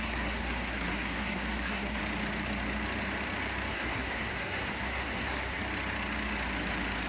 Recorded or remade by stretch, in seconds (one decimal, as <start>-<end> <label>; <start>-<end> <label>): 0.0-2.0 remade; 2.0-3.7 recorded; 3.7-5.6 remade; 5.6-7.1 recorded